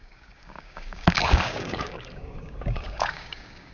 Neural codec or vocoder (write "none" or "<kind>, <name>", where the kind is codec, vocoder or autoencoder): codec, DAC